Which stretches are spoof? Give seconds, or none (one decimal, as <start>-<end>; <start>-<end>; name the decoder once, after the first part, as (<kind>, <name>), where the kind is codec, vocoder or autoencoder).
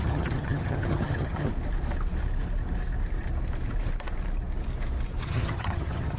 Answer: 0.0-1.5 (vocoder, HiFi-GAN); 5.2-6.2